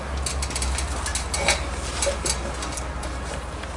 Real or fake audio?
real